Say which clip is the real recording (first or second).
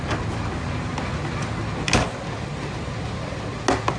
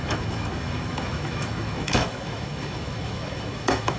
first